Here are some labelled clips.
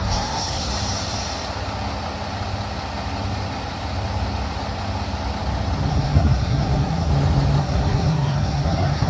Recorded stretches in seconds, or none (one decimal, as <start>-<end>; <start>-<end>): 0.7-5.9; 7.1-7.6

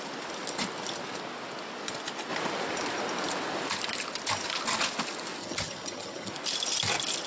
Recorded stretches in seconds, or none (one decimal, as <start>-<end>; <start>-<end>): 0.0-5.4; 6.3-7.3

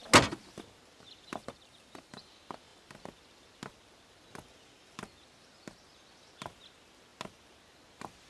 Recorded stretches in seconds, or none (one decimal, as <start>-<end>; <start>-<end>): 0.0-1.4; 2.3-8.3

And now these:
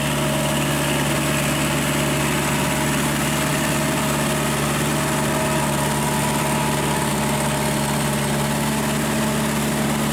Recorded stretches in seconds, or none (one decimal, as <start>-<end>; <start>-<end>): 0.0-10.1

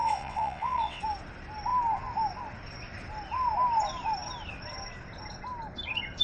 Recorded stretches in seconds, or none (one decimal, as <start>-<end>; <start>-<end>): 1.0-6.2

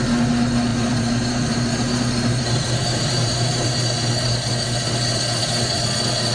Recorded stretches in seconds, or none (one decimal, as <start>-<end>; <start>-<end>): 0.0-0.7; 4.5-6.3

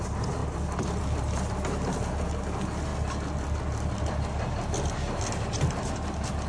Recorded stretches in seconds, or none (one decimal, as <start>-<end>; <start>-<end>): 0.0-6.5

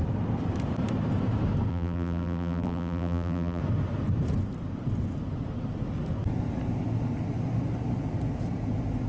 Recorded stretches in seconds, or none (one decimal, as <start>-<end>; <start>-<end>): 0.0-1.7; 3.6-9.1